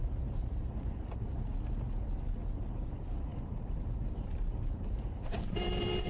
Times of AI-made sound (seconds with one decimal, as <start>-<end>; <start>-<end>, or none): 0.0-1.5; 2.6-6.1